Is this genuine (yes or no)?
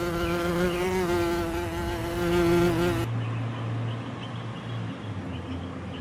yes